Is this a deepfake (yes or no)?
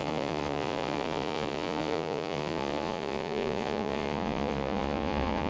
yes